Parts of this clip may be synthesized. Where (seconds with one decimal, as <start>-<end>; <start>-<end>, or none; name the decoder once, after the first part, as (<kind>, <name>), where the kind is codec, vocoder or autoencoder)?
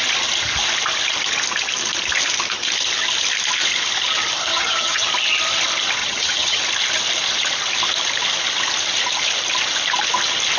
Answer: 4.5-5.1 (vocoder, HiFi-GAN); 6.0-6.6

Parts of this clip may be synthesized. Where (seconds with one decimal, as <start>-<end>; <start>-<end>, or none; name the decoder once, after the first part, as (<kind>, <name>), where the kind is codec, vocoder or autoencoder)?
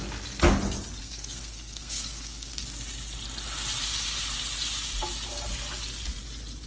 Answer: 1.0-2.6 (codec, SNAC)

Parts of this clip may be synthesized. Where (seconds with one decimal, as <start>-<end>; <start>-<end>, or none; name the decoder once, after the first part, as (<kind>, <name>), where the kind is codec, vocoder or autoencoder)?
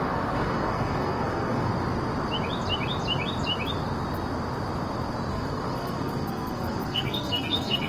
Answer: 0.0-1.7 (codec, SNAC); 5.3-7.9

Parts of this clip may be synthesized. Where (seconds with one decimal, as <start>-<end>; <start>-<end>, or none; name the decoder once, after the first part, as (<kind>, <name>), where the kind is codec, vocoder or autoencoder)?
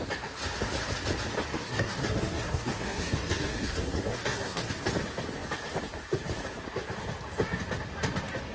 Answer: 1.5-4.7 (codec, SNAC)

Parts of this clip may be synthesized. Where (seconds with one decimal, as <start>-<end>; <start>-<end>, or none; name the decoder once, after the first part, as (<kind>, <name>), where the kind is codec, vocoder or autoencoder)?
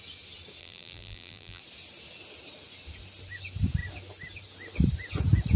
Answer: 0.6-1.6 (vocoder, BigVGAN v2)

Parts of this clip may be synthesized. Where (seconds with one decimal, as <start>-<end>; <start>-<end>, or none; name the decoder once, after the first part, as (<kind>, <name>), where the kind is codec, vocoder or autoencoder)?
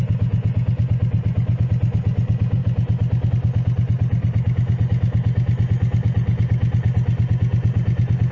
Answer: none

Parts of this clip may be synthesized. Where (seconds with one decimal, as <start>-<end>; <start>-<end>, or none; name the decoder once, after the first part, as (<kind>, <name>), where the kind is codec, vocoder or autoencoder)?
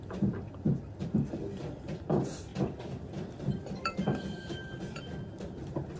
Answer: 0.0-2.5 (vocoder, BigVGAN v2); 3.4-6.0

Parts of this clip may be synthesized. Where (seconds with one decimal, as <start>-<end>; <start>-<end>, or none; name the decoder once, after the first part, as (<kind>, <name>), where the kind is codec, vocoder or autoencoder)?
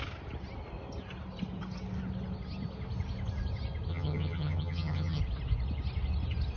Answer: 3.9-5.2 (vocoder, HiFi-GAN)